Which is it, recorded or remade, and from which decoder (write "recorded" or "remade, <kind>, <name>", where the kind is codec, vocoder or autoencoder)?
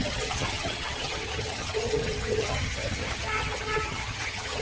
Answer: remade, vocoder, HiFi-GAN